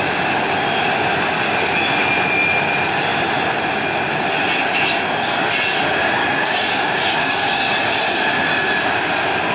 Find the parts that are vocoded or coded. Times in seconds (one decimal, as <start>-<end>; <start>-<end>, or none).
6.2-7.7